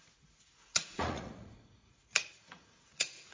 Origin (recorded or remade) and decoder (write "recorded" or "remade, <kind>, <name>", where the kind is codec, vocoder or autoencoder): remade, vocoder, Vocos